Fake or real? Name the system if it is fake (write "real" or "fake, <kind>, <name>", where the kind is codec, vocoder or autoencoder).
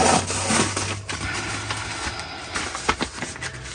real